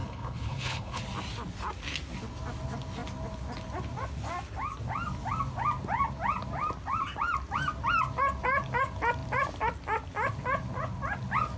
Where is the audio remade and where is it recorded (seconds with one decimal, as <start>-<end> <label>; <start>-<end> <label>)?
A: 0.0-1.0 remade; 1.0-11.6 recorded

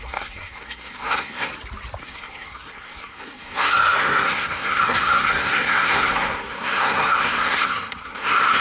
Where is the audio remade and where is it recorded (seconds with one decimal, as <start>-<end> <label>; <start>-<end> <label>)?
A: 0.0-1.5 remade; 1.5-2.0 recorded; 2.0-8.6 remade

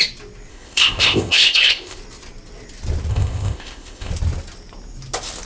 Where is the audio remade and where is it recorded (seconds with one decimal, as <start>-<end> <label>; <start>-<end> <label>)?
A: 0.0-0.5 recorded; 0.5-2.0 remade; 2.0-3.1 recorded; 3.1-4.1 remade; 4.1-5.5 recorded

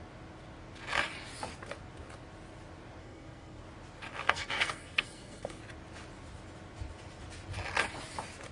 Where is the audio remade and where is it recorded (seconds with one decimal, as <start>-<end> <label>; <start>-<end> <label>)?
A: 0.0-3.0 recorded; 3.0-3.6 remade; 3.6-4.2 recorded; 4.2-5.6 remade; 5.6-8.5 recorded

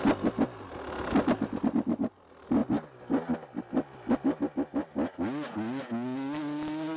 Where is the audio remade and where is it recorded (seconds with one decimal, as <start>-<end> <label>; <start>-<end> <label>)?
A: 0.0-7.0 recorded